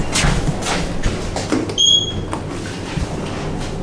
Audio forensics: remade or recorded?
recorded